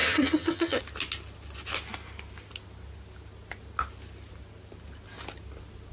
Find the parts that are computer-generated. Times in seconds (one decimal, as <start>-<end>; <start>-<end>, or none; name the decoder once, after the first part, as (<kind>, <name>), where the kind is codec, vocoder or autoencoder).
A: 0.0-0.8 (vocoder, HiFi-GAN)